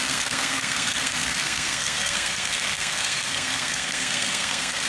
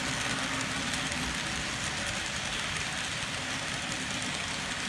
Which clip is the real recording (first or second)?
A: second